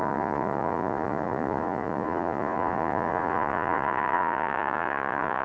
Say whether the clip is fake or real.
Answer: fake